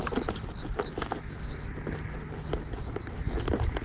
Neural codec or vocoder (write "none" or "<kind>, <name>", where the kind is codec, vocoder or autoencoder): none